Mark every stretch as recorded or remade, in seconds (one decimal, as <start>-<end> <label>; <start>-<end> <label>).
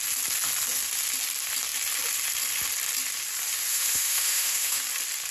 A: 0.0-3.7 recorded; 3.7-4.8 remade; 4.8-5.3 recorded